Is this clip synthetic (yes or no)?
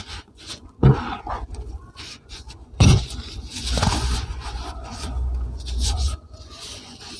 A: yes